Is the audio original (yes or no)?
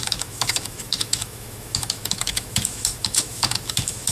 no